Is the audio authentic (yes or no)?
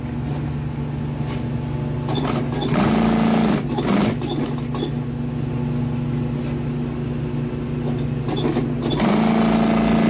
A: yes